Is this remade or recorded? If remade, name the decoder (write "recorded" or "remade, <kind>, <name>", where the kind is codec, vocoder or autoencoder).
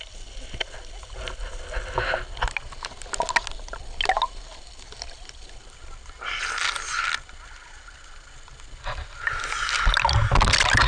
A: recorded